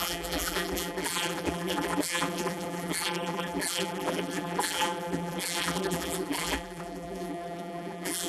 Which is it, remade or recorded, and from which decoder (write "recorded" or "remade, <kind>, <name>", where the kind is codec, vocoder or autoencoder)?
remade, vocoder, BigVGAN v2